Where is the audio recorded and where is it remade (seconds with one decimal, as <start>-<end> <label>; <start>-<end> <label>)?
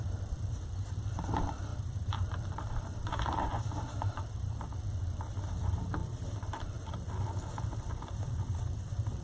0.0-4.7 remade; 4.7-5.5 recorded; 5.5-9.2 remade